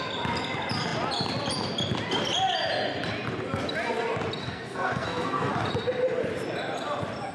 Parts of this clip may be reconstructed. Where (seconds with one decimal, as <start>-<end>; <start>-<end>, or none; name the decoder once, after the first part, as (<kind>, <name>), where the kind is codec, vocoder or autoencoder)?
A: 4.4-5.5 (codec, SNAC)